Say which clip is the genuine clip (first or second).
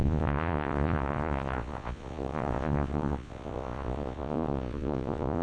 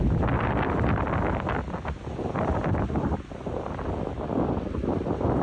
second